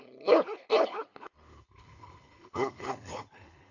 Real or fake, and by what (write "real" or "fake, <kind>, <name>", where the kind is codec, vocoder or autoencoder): fake, codec, HILCodec